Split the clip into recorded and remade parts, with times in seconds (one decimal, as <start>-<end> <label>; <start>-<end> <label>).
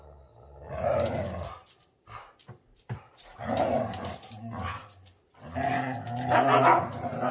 0.0-7.3 recorded